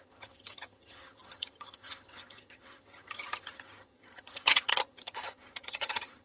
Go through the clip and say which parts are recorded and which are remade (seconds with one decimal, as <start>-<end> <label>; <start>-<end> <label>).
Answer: 0.0-6.2 remade